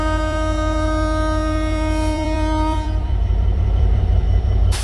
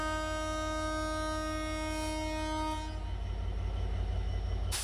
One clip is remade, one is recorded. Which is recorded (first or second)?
second